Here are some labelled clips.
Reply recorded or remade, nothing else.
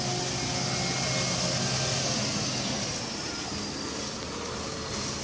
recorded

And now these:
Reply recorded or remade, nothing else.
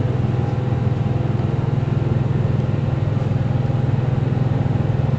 recorded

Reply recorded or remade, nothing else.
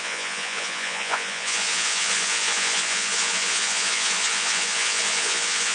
remade